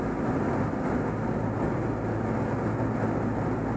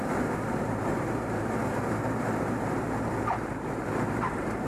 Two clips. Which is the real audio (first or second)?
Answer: first